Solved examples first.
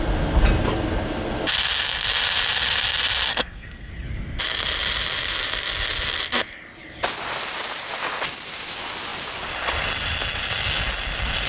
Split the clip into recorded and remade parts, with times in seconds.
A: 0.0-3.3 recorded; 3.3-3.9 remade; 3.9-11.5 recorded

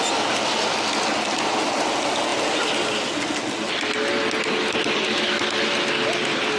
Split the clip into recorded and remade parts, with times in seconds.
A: 0.0-6.6 recorded

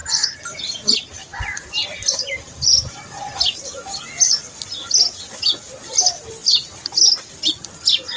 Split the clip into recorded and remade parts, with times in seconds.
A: 0.0-8.2 recorded

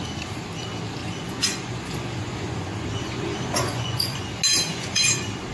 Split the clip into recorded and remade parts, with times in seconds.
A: 0.0-1.0 recorded; 1.0-4.3 remade; 4.3-4.7 recorded; 4.7-5.5 remade

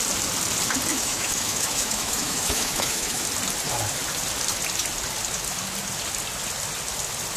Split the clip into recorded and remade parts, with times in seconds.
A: 0.0-0.9 recorded; 0.9-3.2 remade; 3.2-7.4 recorded